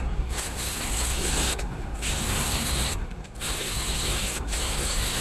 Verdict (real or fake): fake